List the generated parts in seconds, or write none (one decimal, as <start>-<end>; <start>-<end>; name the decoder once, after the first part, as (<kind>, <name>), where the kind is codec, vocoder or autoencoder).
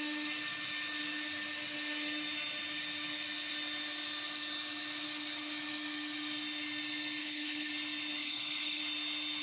7.2-7.7 (codec, HILCodec); 8.2-8.8